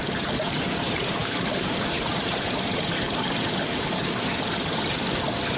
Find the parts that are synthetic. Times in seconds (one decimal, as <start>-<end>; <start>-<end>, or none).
0.0-1.2; 2.1-5.0